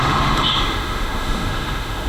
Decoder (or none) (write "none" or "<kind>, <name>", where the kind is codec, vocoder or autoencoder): autoencoder, DAC-VAE